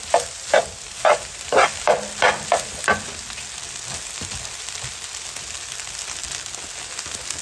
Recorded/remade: recorded